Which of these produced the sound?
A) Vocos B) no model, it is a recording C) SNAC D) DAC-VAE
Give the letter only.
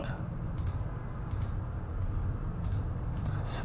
B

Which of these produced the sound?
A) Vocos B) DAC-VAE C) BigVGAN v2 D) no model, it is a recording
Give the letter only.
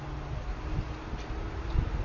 D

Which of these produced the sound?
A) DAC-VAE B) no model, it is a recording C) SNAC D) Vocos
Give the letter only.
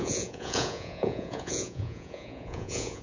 D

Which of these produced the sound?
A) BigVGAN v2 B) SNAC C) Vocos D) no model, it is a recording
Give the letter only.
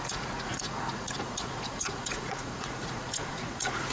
C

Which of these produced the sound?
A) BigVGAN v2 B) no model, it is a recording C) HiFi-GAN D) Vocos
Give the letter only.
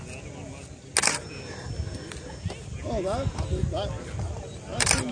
B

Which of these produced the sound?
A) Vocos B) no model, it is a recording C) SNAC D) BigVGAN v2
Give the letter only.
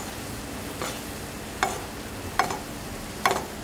B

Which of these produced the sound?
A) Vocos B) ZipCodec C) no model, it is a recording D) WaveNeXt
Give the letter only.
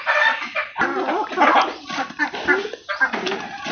C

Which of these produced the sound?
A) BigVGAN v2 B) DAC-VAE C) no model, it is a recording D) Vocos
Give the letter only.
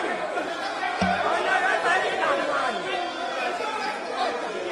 D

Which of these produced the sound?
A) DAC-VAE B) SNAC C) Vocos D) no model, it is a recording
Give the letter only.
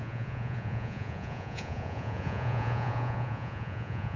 C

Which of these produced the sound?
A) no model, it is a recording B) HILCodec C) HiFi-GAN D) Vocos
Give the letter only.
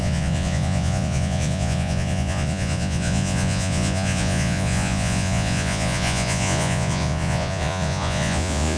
D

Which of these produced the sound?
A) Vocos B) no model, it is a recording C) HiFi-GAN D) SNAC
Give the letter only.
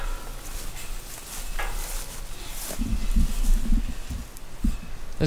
B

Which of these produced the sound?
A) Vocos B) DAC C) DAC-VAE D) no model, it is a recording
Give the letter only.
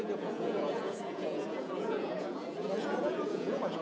A